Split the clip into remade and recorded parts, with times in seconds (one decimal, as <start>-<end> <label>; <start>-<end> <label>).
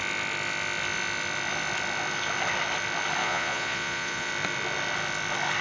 0.0-3.2 recorded; 3.2-4.3 remade; 4.3-5.6 recorded